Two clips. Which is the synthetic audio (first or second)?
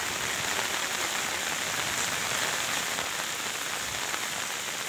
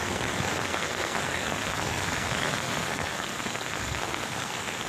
second